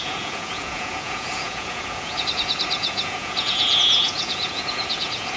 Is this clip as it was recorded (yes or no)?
no